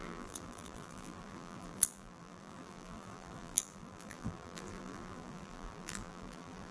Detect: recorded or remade remade